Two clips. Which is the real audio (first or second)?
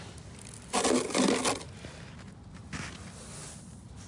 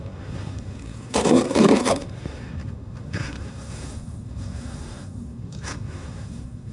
first